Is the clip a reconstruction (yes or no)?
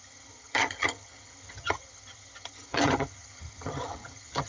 yes